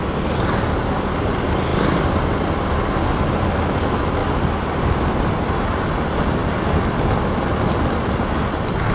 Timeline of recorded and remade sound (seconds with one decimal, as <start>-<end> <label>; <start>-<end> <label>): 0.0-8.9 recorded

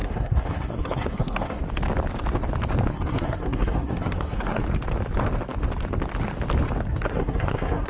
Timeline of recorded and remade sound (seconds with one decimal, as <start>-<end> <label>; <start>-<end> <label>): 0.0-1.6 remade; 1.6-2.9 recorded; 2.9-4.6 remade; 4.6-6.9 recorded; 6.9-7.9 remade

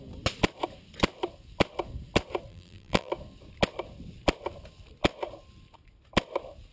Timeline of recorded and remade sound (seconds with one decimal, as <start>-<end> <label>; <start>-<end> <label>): 0.0-2.5 recorded; 2.5-3.1 remade; 3.1-6.7 recorded

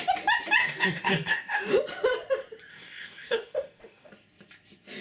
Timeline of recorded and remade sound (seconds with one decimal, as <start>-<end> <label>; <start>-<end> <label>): 0.0-0.6 recorded; 0.6-1.7 remade; 1.7-2.7 recorded; 2.7-4.1 remade; 4.1-5.0 recorded